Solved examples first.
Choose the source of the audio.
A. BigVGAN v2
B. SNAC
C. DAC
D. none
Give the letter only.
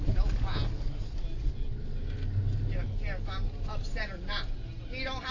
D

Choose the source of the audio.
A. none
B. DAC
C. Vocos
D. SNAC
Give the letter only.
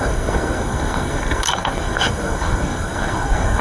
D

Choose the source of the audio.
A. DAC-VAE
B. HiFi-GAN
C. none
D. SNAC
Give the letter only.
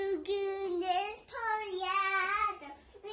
C